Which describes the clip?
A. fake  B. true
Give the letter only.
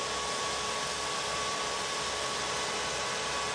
A